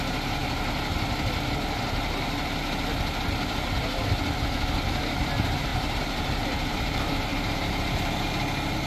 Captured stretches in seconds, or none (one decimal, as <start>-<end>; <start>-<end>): 0.0-5.7; 7.9-8.9